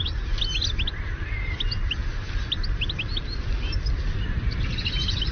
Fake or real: real